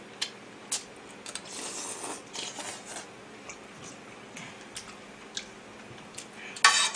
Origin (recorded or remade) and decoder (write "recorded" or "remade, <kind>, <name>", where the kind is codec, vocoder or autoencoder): recorded